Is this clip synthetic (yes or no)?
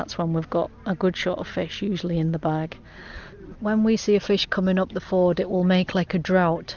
no